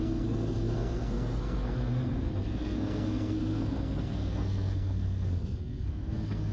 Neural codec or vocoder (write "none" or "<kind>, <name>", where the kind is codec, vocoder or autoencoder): codec, SNAC